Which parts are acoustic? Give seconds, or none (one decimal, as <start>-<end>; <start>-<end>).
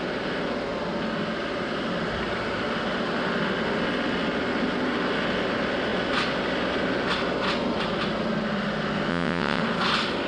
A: 0.0-9.1; 9.6-10.3